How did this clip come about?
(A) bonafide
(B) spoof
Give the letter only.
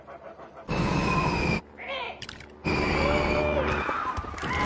B